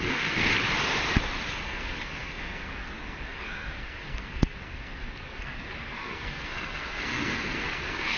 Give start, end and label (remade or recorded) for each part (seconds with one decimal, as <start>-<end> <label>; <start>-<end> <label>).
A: 0.0-0.5 remade; 0.5-1.5 recorded; 1.5-8.2 remade

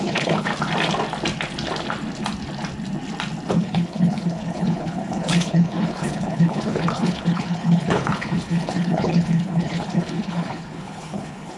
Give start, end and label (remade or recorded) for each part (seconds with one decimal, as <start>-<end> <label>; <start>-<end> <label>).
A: 0.0-0.5 remade; 0.5-3.5 recorded; 3.5-11.6 remade

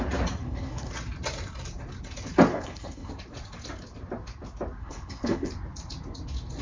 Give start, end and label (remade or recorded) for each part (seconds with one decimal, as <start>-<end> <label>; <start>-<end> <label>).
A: 0.0-0.4 recorded; 0.4-0.9 remade; 0.9-2.5 recorded; 2.5-3.1 remade; 3.1-4.8 recorded; 4.8-5.5 remade; 5.5-6.6 recorded

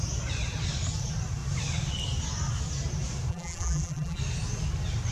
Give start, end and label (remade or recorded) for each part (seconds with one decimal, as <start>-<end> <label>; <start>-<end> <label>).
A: 0.0-3.3 recorded; 3.3-4.2 remade; 4.2-5.1 recorded

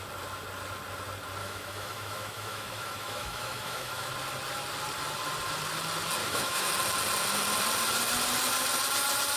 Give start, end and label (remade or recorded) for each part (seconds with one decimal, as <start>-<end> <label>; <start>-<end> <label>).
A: 0.0-1.4 recorded; 1.4-4.1 remade; 4.1-6.2 recorded; 6.2-6.7 remade; 6.7-9.4 recorded

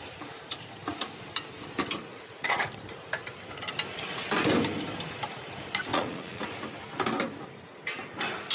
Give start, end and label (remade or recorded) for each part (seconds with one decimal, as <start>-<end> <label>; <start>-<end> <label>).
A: 0.0-2.1 recorded; 2.1-2.6 remade; 2.6-5.9 recorded; 5.9-6.4 remade; 6.4-8.5 recorded